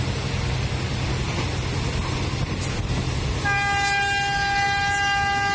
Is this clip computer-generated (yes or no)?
no